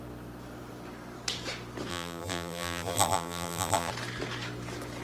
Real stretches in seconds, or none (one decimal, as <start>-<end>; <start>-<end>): 0.0-1.9; 3.9-5.0